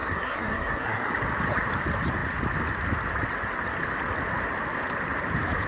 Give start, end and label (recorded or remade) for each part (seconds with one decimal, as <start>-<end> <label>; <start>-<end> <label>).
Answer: 0.0-1.1 remade; 1.1-5.7 recorded